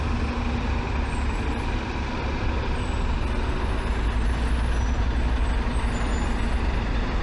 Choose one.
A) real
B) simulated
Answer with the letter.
A